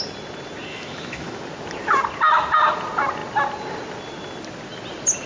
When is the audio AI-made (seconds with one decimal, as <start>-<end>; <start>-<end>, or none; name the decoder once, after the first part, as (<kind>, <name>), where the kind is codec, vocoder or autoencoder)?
0.7-1.4 (autoencoder, DAC-VAE)